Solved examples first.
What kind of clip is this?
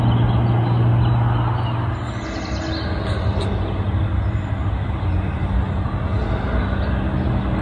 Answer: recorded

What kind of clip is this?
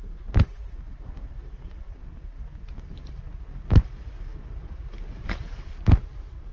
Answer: remade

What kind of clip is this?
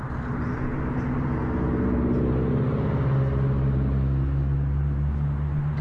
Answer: recorded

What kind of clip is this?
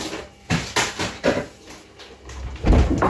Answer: recorded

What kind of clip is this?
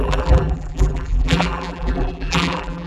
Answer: remade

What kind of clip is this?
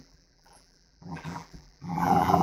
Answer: remade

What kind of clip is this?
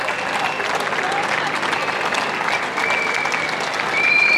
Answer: recorded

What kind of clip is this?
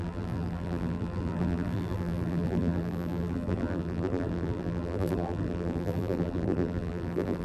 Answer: remade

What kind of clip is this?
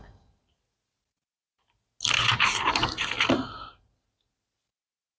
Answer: recorded